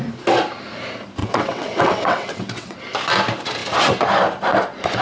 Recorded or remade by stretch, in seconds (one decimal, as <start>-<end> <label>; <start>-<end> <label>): 0.0-1.2 recorded; 1.2-2.8 remade; 2.8-5.0 recorded

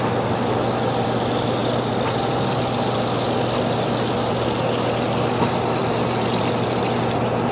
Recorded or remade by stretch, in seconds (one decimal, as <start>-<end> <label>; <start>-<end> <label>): 0.0-7.5 recorded

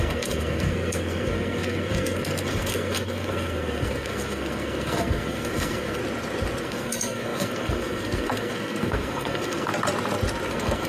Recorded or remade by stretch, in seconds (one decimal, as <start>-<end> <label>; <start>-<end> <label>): 0.0-6.0 remade; 6.0-6.6 recorded; 6.6-9.7 remade; 9.7-10.5 recorded; 10.5-10.9 remade

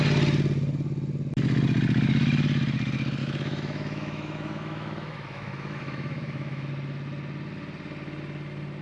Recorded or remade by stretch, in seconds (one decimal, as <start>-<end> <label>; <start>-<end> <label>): 0.0-3.2 recorded; 3.2-6.7 remade; 6.7-8.8 recorded